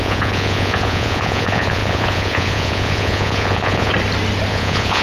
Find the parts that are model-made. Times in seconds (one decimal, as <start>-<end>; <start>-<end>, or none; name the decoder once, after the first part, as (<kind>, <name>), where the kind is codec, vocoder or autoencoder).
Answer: 0.0-3.9 (vocoder, Vocos); 4.5-5.0